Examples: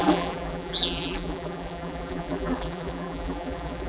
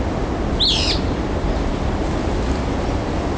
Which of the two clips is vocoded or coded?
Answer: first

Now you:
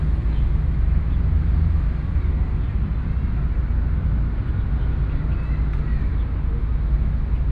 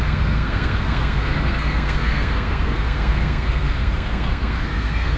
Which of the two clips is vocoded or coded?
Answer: second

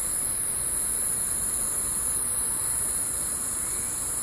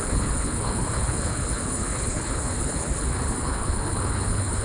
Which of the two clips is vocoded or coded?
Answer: second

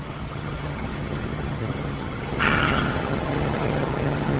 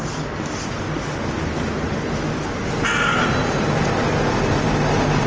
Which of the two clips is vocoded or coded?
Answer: first